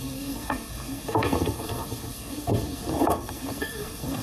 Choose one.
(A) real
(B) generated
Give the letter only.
B